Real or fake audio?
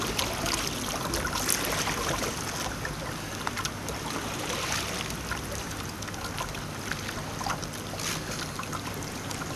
real